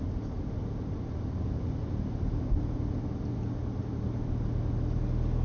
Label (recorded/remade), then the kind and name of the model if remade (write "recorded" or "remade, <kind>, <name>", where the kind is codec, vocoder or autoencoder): recorded